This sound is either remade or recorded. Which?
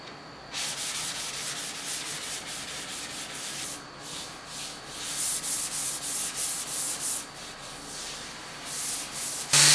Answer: recorded